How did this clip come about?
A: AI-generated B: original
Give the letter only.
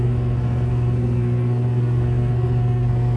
A